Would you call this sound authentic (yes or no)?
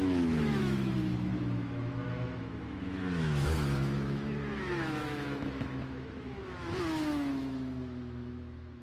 no